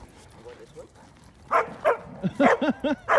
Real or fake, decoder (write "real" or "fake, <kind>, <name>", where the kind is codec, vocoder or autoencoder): real